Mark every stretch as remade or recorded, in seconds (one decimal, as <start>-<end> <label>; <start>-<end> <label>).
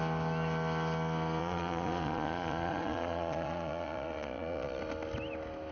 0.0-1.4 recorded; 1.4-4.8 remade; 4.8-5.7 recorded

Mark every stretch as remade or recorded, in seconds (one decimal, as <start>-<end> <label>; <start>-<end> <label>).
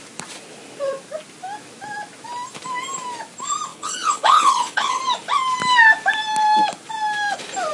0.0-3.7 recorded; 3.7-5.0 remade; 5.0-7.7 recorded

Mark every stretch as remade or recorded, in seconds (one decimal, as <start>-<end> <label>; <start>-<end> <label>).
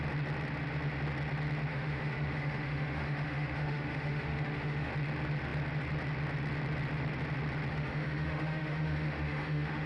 0.0-1.7 recorded; 1.7-4.9 remade; 4.9-7.7 recorded; 7.7-9.9 remade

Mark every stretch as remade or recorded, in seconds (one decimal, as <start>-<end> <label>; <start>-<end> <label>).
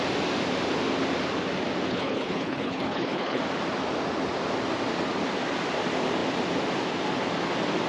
0.0-1.9 recorded; 1.9-3.4 remade; 3.4-7.9 recorded